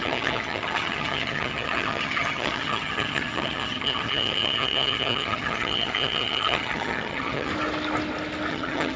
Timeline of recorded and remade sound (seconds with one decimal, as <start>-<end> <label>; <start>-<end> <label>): 0.0-7.5 remade; 7.5-8.5 recorded; 8.5-9.0 remade